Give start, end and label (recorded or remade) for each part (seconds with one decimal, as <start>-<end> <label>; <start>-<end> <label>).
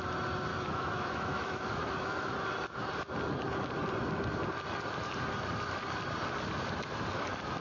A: 0.0-0.5 recorded; 0.5-2.3 remade; 2.3-7.6 recorded